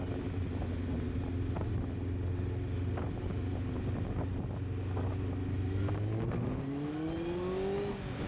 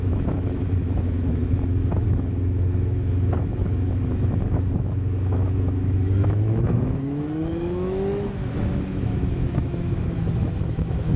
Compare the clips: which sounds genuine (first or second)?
first